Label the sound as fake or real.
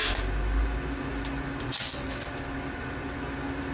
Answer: real